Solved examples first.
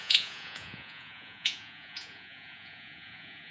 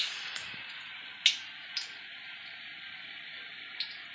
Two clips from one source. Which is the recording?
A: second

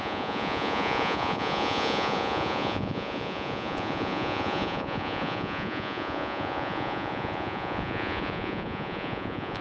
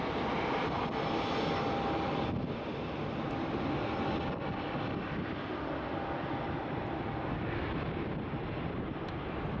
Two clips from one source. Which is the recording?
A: second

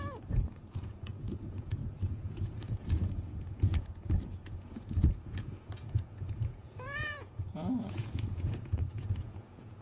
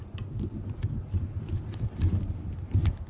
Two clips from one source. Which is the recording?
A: second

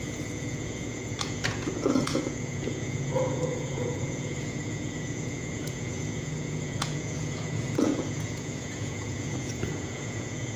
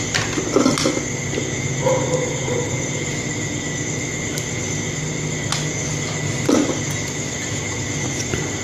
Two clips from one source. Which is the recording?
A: second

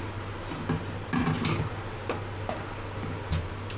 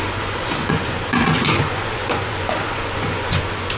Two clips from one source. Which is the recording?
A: first